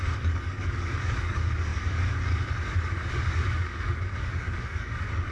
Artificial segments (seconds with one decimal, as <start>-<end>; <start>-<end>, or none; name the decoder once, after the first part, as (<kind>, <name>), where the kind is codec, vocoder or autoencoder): 0.0-5.3 (codec, DAC)